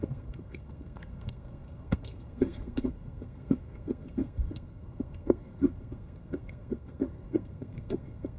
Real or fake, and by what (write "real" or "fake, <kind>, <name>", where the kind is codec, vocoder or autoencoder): fake, codec, SNAC